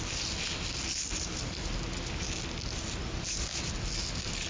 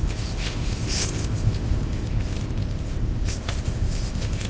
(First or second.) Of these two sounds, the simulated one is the second